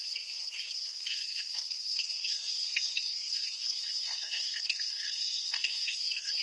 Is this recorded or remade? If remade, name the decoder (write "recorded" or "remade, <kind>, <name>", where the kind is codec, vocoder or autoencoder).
remade, codec, SNAC